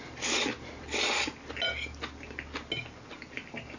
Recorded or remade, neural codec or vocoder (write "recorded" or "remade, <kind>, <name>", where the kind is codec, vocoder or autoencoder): recorded